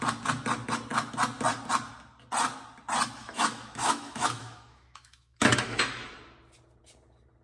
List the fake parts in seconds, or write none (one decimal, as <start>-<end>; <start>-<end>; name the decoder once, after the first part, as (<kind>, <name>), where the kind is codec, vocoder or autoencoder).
3.2-5.8 (autoencoder, DAC-VAE)